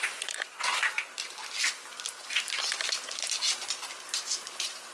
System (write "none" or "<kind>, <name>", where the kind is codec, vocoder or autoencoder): none